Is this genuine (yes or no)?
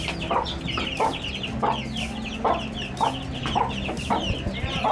yes